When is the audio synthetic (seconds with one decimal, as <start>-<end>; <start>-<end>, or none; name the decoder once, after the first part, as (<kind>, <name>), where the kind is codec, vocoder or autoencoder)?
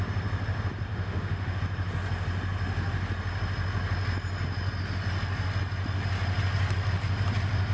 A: 0.9-1.6 (autoencoder, DAC-VAE)